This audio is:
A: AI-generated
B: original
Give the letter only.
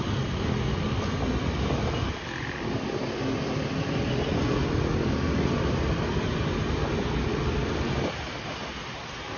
B